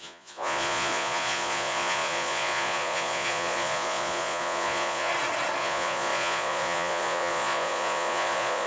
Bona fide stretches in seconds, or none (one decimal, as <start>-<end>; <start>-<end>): 5.1-5.6